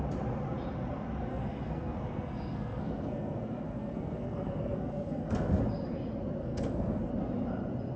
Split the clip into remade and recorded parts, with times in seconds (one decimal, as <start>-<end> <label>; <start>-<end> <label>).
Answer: 0.0-1.3 recorded; 1.3-5.6 remade; 5.6-6.4 recorded; 6.4-7.1 remade; 7.1-8.0 recorded